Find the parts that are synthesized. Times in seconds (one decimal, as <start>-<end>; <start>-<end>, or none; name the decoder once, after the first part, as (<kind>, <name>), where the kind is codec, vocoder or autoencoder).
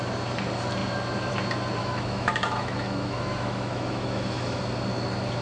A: 1.8-4.6 (autoencoder, DAC-VAE)